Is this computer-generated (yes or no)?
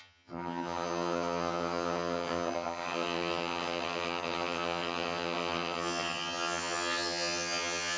yes